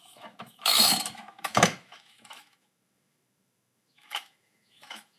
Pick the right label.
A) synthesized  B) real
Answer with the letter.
A